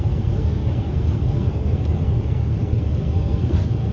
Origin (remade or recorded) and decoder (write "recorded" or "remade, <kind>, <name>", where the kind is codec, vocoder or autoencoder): remade, codec, SNAC